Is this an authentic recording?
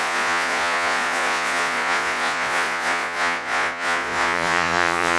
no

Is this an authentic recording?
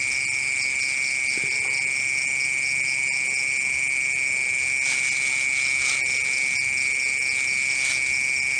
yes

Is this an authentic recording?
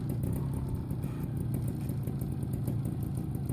yes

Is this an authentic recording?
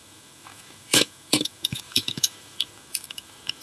no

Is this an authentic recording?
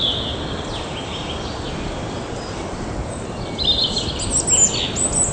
yes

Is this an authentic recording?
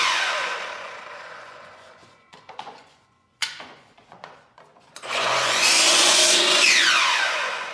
no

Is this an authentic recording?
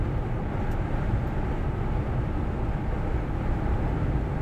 yes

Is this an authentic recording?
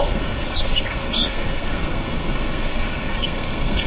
no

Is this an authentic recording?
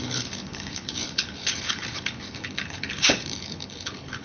no